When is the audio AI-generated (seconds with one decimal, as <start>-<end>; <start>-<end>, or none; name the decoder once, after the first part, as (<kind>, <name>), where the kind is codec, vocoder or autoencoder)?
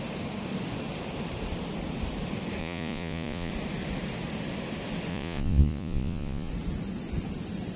2.6-3.5 (vocoder, Vocos); 5.1-6.5